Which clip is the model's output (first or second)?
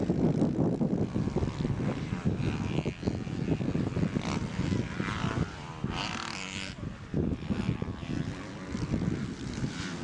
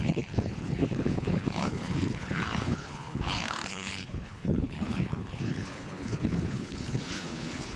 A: second